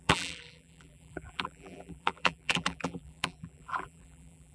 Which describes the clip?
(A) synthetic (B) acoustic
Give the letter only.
A